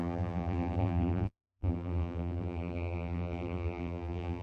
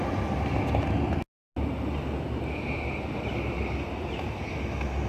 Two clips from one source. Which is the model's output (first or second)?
first